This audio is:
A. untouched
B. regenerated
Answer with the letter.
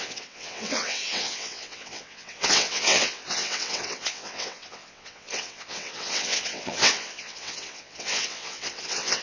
B